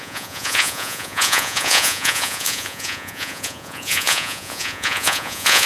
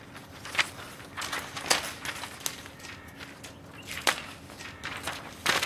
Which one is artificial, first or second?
first